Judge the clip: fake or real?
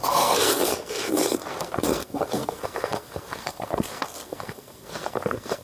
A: fake